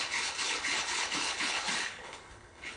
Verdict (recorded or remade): remade